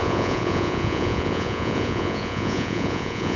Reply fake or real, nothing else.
fake